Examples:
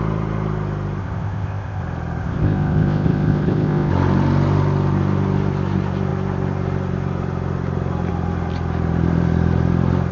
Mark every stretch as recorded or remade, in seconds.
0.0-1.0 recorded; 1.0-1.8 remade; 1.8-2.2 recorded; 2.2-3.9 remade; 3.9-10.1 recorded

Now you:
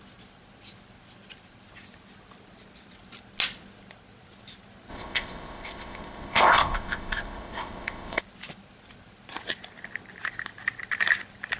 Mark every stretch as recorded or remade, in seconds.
0.0-4.9 recorded; 4.9-8.2 remade; 8.2-11.6 recorded